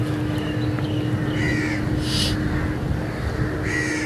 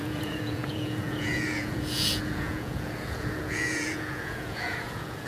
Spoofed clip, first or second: second